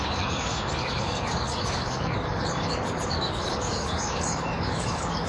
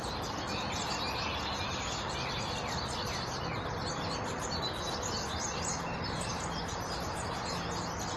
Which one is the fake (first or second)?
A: first